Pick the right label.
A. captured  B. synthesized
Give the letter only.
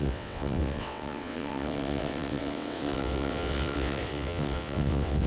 B